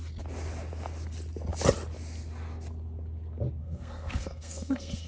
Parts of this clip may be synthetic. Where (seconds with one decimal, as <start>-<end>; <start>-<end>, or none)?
3.6-5.1